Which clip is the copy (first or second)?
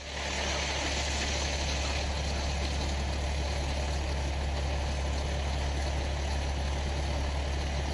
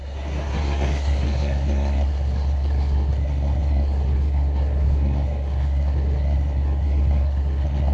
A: second